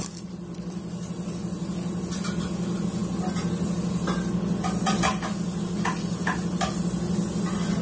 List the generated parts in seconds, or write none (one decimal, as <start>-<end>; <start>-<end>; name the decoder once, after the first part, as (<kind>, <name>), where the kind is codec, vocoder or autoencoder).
none